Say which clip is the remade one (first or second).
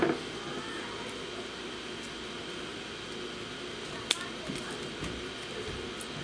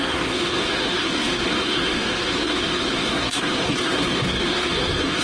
second